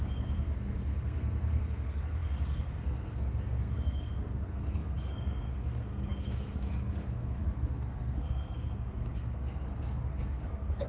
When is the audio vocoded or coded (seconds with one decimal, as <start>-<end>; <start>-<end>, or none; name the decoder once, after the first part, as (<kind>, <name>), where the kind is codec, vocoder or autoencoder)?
0.0-10.9 (codec, SNAC)